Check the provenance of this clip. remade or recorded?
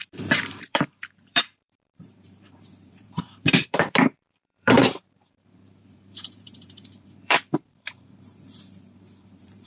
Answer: remade